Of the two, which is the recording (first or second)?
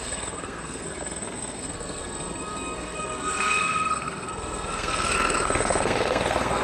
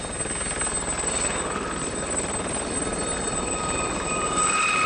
second